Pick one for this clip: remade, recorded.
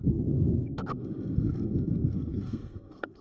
remade